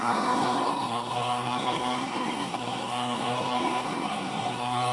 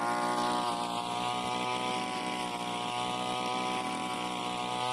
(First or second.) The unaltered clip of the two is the second